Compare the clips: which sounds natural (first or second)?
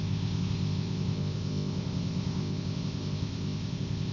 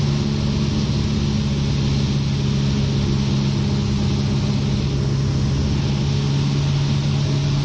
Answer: second